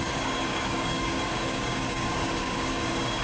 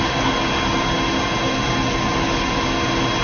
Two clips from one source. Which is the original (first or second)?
second